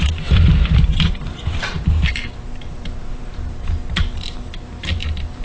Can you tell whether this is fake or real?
fake